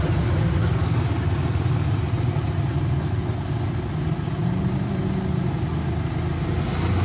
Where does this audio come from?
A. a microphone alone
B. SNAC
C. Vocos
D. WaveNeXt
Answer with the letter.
A